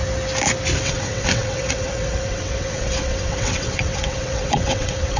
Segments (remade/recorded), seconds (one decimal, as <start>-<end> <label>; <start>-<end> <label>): 0.0-0.8 recorded; 0.8-5.2 remade